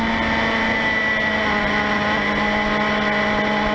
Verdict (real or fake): real